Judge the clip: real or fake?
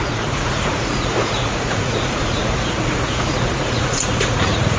fake